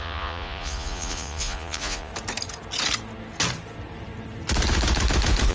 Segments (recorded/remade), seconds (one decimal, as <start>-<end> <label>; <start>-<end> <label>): 0.0-2.1 remade; 2.1-5.5 recorded